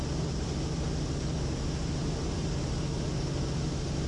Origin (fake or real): real